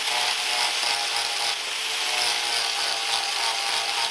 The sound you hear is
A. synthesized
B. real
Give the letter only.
B